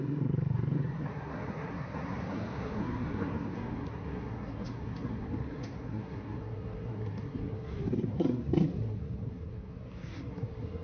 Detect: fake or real fake